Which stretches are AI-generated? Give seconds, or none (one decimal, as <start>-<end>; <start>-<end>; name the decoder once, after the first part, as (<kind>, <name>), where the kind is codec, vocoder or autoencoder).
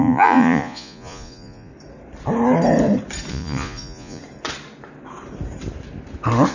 0.0-1.7 (vocoder, Vocos); 3.3-4.2